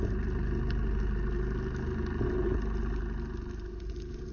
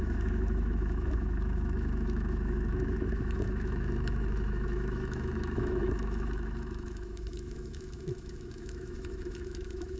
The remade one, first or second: second